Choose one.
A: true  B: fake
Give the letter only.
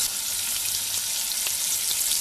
A